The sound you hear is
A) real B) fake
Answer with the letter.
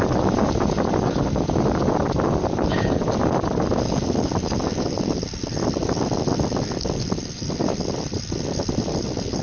A